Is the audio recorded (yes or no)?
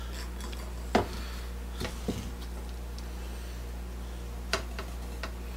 yes